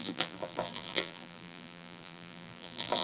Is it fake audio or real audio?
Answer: fake